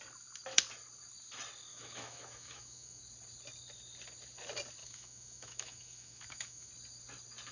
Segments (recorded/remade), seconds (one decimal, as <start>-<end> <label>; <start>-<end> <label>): 0.0-1.7 recorded; 1.7-3.0 remade; 3.0-4.8 recorded; 4.8-6.7 remade; 6.7-7.5 recorded